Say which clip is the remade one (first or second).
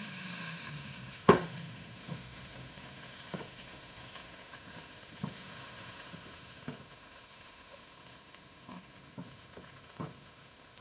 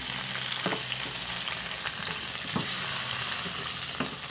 first